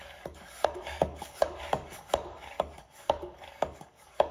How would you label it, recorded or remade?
remade